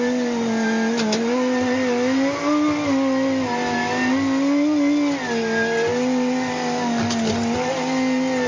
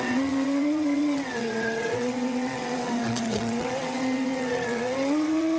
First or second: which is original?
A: first